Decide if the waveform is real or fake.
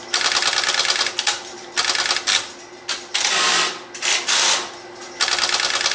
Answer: real